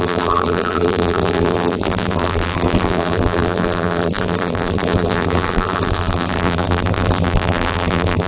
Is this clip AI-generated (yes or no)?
yes